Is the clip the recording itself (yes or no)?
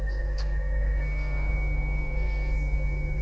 no